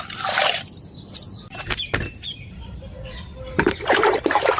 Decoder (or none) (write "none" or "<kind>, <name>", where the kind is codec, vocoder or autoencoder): none